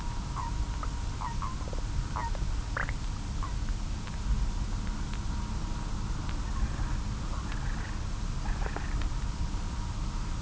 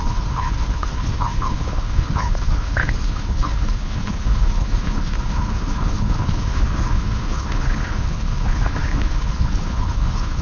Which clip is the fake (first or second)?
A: second